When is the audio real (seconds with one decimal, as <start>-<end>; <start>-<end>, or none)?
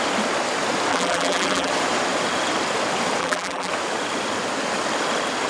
0.0-0.9; 1.7-3.2; 3.7-5.5